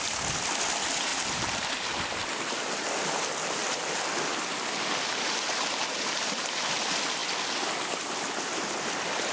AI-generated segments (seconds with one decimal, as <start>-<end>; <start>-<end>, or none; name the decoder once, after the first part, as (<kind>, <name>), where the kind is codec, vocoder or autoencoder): none